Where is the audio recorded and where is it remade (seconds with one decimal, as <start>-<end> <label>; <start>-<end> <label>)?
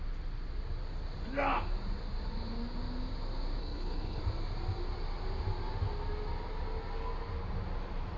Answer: 0.0-3.6 recorded; 3.6-4.2 remade; 4.2-8.2 recorded